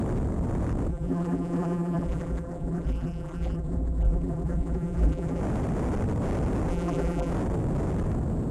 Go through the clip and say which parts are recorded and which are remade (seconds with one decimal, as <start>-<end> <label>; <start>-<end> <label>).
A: 0.0-0.9 recorded; 0.9-5.4 remade; 5.4-6.7 recorded; 6.7-7.3 remade; 7.3-8.5 recorded